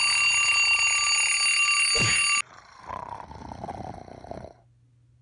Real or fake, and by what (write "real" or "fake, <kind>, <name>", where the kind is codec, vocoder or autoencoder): real